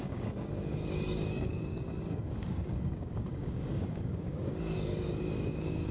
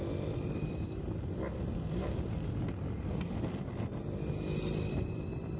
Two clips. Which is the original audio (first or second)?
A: second